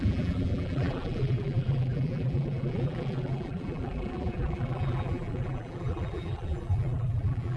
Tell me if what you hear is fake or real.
fake